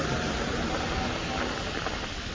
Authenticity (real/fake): real